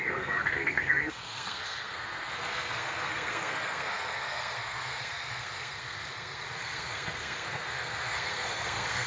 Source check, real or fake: fake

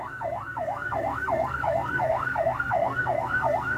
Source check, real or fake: fake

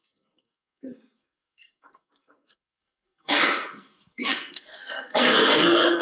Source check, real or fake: fake